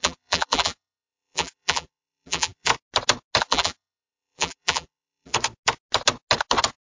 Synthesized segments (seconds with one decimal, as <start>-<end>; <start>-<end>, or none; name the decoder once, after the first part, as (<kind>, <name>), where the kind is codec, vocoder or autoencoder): 0.0-2.7 (vocoder, BigVGAN v2); 3.4-5.3